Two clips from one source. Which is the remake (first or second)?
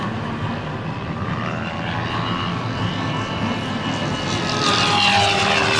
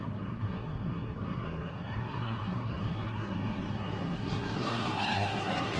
second